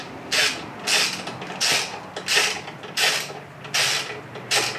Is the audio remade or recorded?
recorded